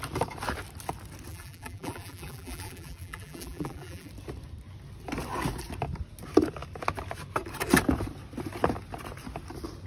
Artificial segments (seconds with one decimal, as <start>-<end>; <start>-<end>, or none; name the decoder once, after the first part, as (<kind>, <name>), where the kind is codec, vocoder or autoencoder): 1.3-4.1 (vocoder, BigVGAN v2)